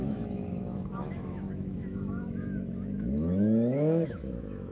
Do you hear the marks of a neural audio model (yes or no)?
yes